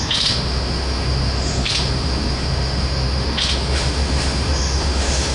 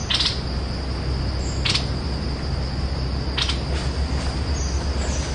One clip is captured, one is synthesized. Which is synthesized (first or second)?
first